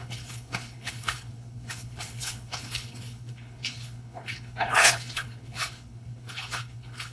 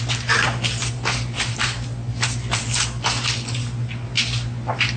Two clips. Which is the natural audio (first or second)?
second